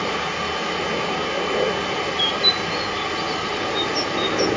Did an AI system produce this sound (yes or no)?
no